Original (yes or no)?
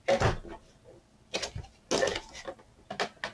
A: yes